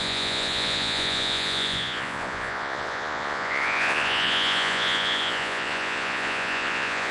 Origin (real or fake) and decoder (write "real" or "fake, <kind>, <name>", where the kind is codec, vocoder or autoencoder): fake, vocoder, Vocos